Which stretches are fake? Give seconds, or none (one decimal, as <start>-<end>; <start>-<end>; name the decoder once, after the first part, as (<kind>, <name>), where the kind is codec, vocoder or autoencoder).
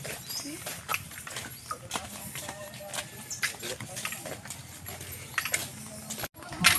0.9-2.6 (vocoder, BigVGAN v2)